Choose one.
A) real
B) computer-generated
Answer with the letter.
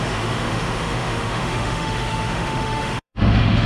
B